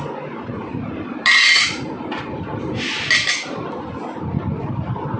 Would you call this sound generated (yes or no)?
no